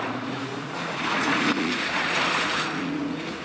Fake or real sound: fake